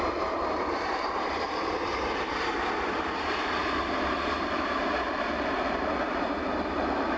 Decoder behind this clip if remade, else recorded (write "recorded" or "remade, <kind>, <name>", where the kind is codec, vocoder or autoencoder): remade, vocoder, BigVGAN v2